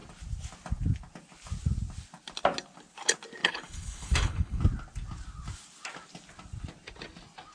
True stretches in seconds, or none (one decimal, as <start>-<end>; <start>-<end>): 0.0-3.4; 4.6-7.5